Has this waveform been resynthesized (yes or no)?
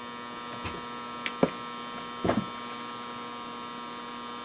no